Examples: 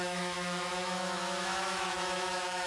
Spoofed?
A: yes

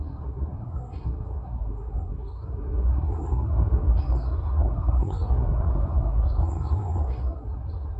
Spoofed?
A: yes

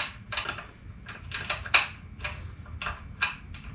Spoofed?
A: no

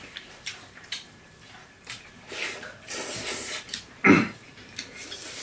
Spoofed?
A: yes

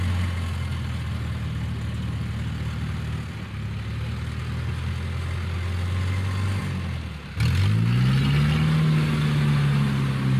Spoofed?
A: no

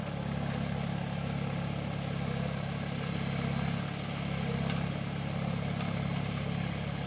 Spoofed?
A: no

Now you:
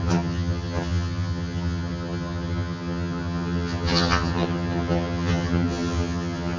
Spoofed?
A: yes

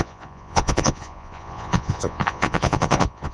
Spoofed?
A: yes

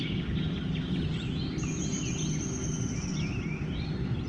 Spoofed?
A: no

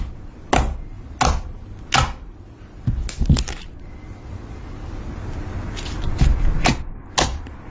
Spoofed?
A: no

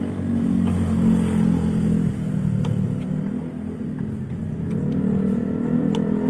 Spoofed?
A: no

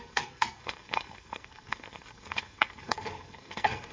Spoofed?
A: yes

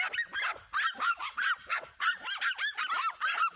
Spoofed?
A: no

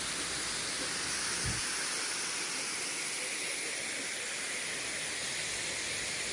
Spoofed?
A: no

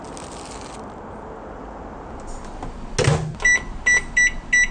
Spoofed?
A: no